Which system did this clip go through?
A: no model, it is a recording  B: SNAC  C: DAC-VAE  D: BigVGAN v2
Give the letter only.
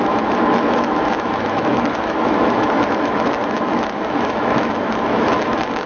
C